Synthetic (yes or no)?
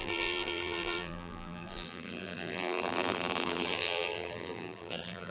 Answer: yes